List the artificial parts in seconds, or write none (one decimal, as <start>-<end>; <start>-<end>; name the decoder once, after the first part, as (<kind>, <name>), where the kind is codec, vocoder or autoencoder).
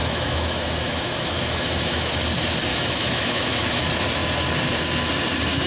0.0-2.1 (autoencoder, DAC-VAE); 2.7-3.8